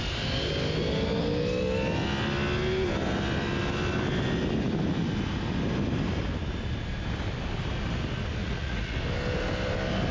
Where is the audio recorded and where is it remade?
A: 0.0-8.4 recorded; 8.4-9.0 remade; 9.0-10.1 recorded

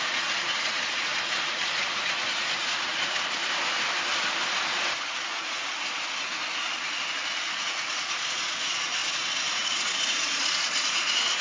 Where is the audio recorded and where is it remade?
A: 0.0-3.4 remade; 3.4-7.7 recorded; 7.7-9.0 remade; 9.0-9.5 recorded; 9.5-11.4 remade

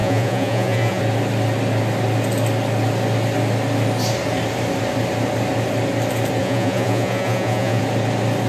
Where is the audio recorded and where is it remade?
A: 0.0-1.0 remade; 1.0-6.4 recorded; 6.4-7.8 remade; 7.8-8.5 recorded

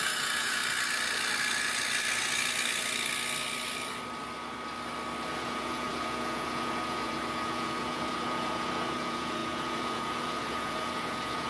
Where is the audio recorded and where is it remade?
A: 0.0-0.6 remade; 0.6-5.3 recorded; 5.3-11.5 remade

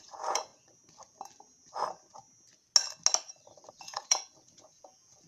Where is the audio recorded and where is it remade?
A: 0.0-0.5 remade; 0.5-3.7 recorded; 3.7-5.3 remade